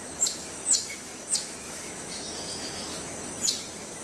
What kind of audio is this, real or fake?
fake